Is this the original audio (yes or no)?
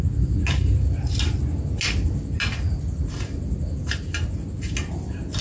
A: yes